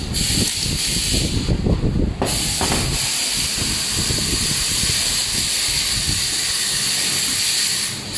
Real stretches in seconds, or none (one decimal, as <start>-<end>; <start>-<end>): 0.0-8.2